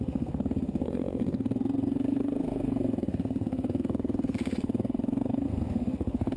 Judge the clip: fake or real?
fake